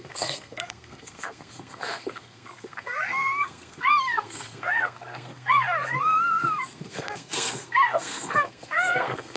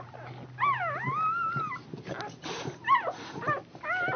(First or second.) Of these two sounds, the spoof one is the first